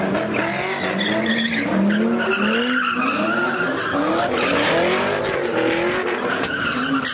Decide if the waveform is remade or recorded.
recorded